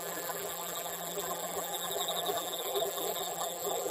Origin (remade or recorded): remade